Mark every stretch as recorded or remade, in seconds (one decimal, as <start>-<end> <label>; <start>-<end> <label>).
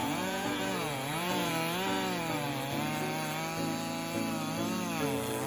0.0-1.5 remade; 1.5-5.5 recorded